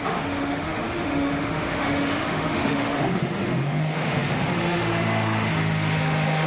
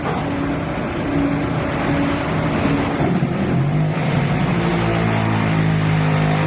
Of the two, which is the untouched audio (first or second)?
second